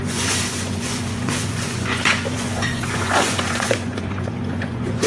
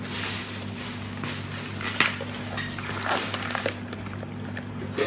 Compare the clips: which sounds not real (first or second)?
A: first